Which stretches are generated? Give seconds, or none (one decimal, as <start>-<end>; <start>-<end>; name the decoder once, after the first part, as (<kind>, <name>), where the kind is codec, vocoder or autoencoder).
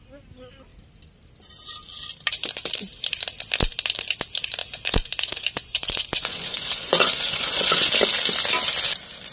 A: 4.6-7.9 (vocoder, Vocos)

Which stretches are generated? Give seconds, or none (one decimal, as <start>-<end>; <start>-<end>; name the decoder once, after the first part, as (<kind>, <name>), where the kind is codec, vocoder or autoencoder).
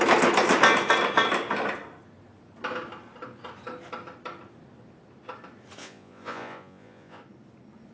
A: 5.8-7.2 (vocoder, Vocos)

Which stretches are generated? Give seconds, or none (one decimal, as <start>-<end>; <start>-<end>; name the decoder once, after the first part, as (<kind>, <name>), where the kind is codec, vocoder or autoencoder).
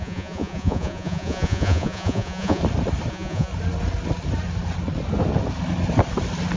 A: 0.0-2.6 (vocoder, Vocos); 3.1-3.5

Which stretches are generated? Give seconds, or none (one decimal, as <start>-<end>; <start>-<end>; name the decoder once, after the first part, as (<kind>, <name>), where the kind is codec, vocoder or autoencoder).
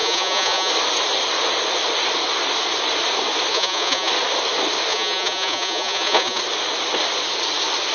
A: 0.0-0.7 (vocoder, Vocos); 3.5-4.1; 4.9-6.4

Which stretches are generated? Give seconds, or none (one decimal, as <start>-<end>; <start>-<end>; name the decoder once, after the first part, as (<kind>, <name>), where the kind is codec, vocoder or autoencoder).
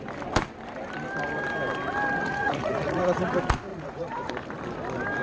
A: 2.2-3.3 (vocoder, Vocos); 3.7-4.3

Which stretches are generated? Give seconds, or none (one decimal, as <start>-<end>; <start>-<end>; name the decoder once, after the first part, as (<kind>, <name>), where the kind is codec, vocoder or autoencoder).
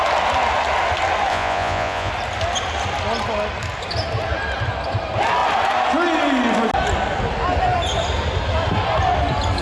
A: 1.3-2.1 (vocoder, Vocos)